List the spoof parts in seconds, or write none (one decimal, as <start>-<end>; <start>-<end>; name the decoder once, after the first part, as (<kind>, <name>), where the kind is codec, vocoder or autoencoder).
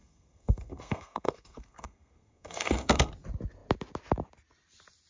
0.0-3.1 (codec, SNAC)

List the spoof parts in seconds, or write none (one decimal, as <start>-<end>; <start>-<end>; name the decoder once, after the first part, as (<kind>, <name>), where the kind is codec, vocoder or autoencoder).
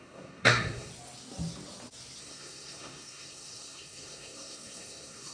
0.0-0.9 (codec, SNAC); 2.2-5.3